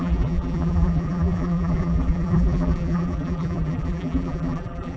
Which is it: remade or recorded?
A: remade